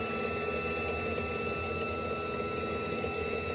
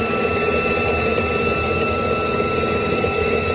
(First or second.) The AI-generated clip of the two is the second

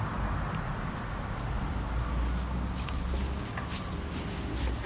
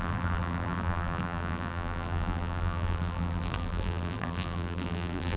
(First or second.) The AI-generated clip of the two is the second